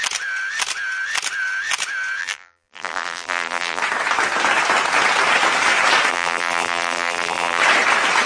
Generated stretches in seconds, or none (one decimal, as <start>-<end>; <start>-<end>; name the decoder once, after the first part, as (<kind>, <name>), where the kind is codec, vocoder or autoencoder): 2.2-3.8 (vocoder, BigVGAN v2); 6.1-7.6